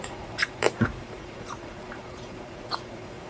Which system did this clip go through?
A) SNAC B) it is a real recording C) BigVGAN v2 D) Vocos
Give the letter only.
D